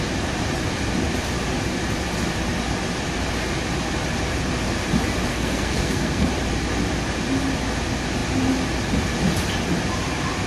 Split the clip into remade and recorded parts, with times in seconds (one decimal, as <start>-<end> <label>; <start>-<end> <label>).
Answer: 0.0-5.3 recorded; 5.3-6.3 remade; 6.3-10.5 recorded